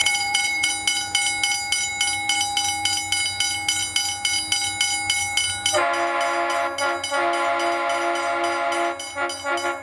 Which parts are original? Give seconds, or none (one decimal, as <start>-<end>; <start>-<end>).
0.7-9.8